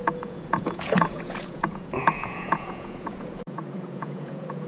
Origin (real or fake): fake